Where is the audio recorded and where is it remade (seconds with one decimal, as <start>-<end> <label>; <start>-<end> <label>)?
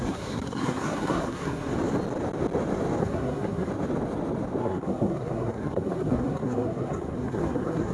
0.0-1.7 remade; 1.7-3.0 recorded; 3.0-3.7 remade; 3.7-4.6 recorded; 4.6-7.9 remade